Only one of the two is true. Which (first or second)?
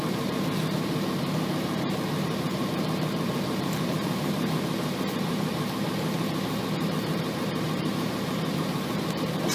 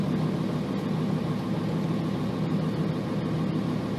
second